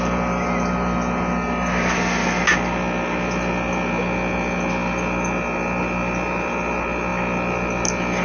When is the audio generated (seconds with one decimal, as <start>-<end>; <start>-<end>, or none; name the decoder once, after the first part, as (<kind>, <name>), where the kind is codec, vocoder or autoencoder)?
none